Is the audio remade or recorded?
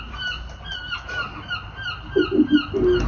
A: recorded